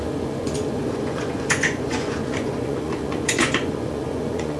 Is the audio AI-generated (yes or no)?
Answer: yes